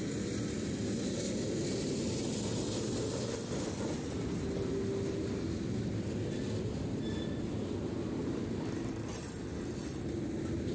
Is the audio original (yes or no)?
yes